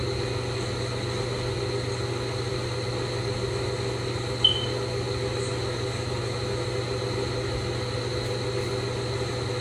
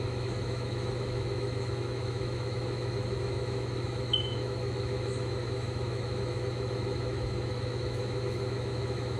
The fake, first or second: second